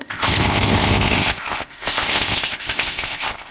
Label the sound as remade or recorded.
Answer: remade